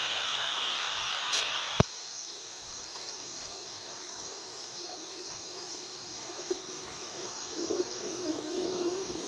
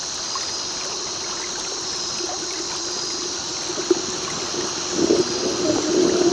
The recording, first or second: second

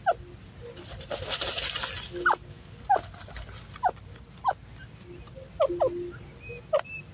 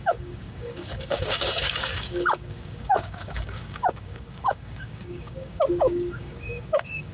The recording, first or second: first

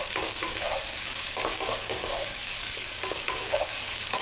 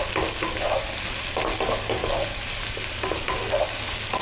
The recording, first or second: second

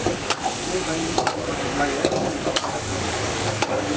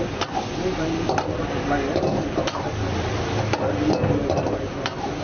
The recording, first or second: second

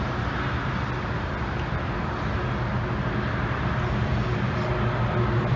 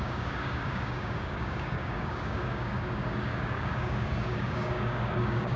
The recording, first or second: first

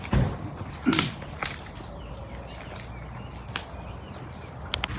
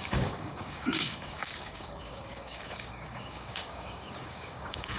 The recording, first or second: first